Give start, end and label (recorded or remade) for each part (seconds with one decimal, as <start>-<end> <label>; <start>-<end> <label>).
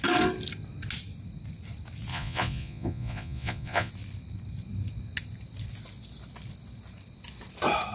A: 0.0-2.1 recorded; 2.1-3.9 remade; 3.9-7.9 recorded